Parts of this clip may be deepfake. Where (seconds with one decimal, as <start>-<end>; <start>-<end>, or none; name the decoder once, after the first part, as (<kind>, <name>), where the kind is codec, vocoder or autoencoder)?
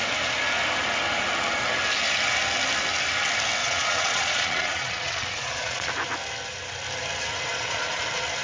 3.6-5.9 (vocoder, Vocos); 7.5-8.0